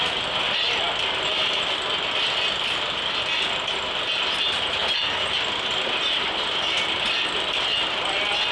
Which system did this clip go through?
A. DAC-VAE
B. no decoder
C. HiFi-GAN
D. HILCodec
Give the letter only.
B